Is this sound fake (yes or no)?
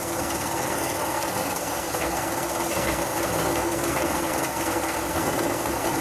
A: yes